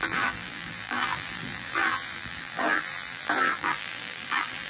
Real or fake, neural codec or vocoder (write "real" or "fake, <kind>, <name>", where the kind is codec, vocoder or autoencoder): fake, vocoder, BigVGAN v2